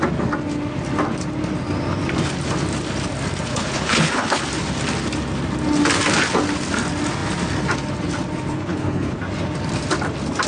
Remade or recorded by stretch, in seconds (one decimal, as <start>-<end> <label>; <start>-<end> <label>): 0.0-3.5 recorded; 3.5-4.4 remade; 4.4-8.5 recorded; 8.5-9.2 remade; 9.2-10.5 recorded